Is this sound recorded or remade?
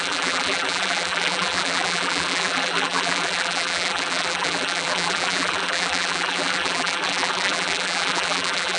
remade